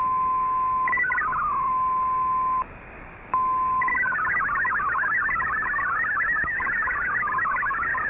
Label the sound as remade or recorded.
remade